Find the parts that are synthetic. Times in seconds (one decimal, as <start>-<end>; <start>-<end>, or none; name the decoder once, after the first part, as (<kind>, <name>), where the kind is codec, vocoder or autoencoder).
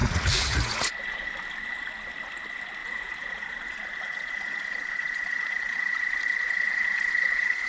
0.0-1.3 (vocoder, Vocos); 2.8-7.7